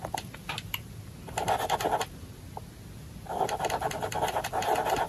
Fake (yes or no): no